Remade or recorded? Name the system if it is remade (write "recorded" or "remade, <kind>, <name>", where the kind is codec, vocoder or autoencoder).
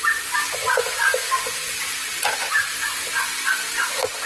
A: recorded